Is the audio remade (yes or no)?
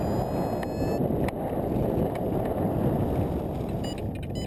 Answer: no